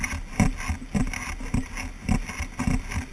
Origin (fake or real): real